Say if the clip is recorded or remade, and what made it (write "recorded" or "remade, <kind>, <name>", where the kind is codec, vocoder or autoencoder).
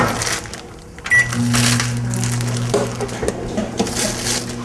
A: recorded